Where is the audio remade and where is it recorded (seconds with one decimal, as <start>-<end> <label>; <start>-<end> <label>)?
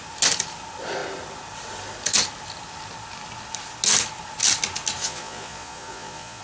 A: 0.0-5.0 recorded; 5.0-6.4 remade